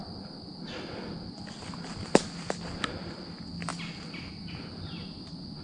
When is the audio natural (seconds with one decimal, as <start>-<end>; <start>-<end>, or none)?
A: 0.0-5.6